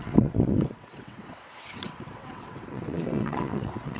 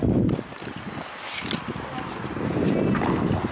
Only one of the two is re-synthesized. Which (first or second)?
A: first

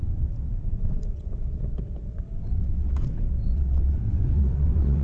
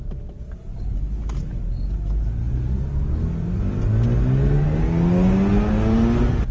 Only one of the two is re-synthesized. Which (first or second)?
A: first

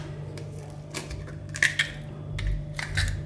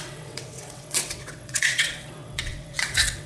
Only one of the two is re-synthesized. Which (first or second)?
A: second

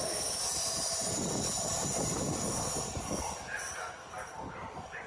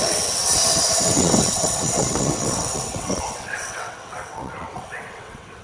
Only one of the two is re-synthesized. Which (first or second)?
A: second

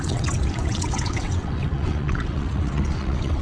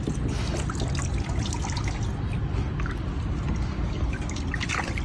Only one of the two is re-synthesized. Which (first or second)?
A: first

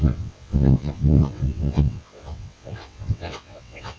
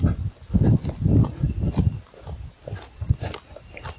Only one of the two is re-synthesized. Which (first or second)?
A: first